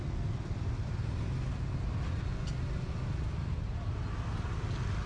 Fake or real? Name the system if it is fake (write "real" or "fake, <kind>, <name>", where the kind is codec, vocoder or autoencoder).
real